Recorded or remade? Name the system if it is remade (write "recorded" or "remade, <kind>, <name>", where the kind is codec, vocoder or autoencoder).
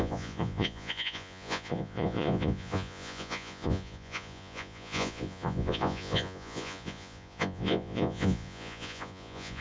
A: remade, vocoder, Vocos